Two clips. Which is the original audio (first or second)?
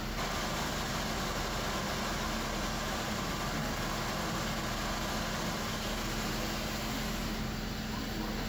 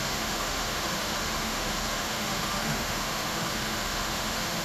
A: first